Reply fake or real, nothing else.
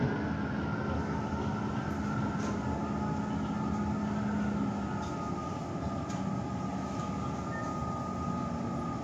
real